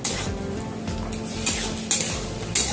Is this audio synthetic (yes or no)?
no